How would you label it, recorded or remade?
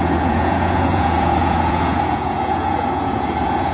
remade